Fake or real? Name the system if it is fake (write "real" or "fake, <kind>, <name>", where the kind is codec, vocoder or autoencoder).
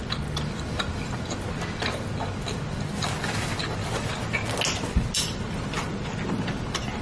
real